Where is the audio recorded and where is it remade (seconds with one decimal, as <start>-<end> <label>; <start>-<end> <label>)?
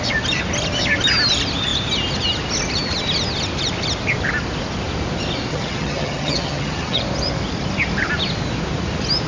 0.0-5.5 recorded; 5.5-7.0 remade; 7.0-9.3 recorded